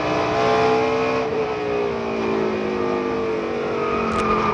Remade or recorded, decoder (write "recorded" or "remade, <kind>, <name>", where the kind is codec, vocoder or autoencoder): recorded